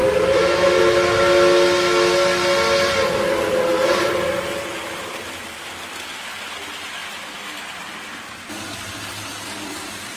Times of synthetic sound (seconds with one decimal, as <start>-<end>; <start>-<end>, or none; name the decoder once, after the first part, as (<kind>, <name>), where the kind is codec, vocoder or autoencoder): 0.0-0.8 (vocoder, BigVGAN v2); 3.5-4.1